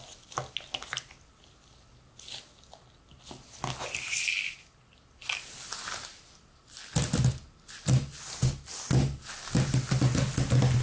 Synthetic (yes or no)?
no